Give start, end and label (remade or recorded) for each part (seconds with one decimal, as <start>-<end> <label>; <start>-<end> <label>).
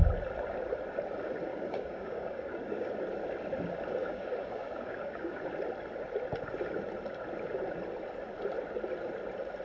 0.0-1.5 recorded; 1.5-2.9 remade; 2.9-4.0 recorded; 4.0-5.4 remade; 5.4-9.6 recorded